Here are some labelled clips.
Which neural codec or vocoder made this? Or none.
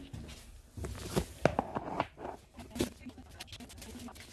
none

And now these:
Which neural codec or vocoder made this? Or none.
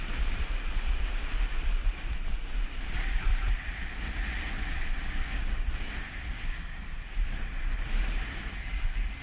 none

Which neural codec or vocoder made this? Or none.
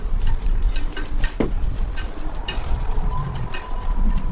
none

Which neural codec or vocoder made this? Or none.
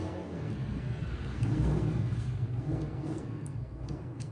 codec, SNAC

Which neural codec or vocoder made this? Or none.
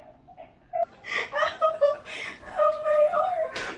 vocoder, Vocos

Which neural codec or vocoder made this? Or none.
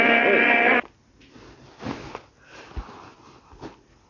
none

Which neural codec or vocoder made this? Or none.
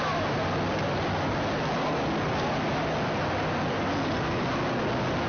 none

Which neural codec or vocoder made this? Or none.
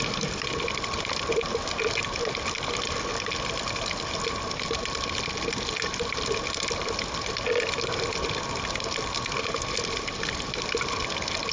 none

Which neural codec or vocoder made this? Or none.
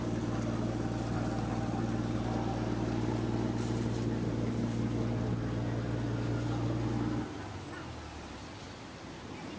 none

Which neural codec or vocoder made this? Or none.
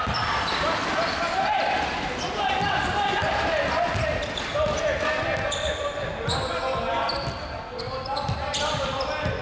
none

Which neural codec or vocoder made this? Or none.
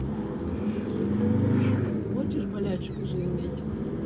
none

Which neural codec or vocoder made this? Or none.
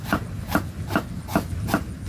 none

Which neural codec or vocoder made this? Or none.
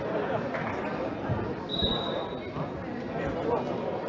none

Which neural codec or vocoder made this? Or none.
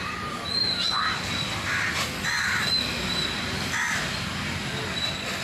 none